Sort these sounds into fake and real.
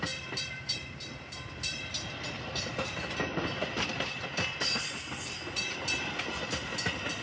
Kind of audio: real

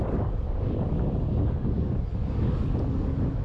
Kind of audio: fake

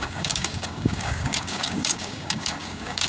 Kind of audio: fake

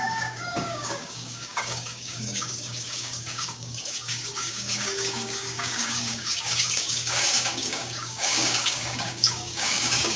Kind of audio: fake